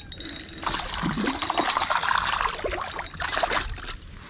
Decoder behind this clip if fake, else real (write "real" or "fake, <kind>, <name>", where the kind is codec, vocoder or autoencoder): real